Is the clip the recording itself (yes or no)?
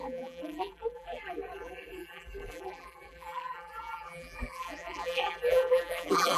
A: no